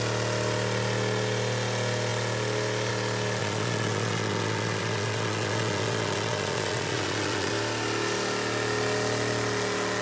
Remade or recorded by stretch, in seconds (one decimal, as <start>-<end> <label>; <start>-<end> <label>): 0.0-3.4 recorded; 3.4-7.5 remade; 7.5-10.0 recorded